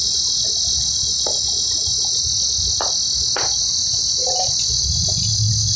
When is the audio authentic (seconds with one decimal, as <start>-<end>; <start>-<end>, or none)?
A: 0.0-5.8